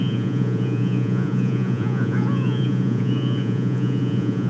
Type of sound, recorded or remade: remade